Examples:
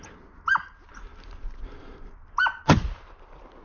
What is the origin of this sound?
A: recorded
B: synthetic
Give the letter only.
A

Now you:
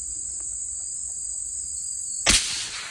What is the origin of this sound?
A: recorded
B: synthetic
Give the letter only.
A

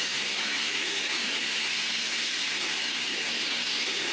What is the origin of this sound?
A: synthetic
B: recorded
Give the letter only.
A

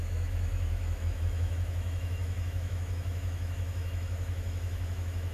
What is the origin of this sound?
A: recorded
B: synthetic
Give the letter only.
B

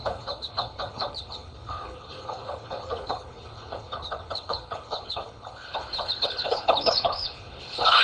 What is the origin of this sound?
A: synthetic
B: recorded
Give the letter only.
A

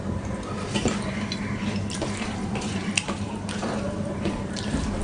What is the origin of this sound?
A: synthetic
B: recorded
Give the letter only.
A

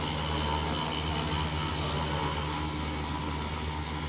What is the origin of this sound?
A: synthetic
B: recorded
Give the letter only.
B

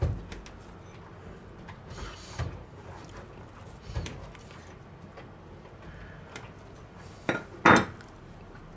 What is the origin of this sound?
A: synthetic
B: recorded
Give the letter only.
B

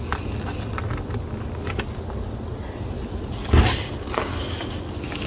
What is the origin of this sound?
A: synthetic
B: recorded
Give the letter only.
B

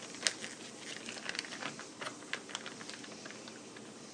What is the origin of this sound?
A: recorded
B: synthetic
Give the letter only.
A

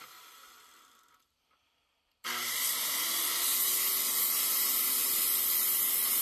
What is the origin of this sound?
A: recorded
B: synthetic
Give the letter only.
B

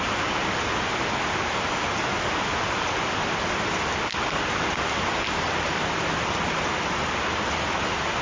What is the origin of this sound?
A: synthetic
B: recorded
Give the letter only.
B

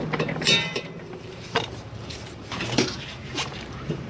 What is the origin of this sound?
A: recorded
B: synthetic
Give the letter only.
B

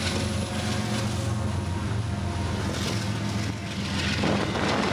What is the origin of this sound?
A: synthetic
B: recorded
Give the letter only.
B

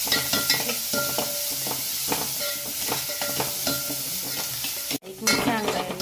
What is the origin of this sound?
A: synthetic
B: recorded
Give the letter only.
B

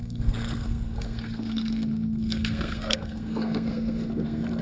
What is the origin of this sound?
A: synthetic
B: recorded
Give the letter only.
A